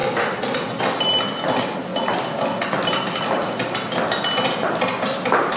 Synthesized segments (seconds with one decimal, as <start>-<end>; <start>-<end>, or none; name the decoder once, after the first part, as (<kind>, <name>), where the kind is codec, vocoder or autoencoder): none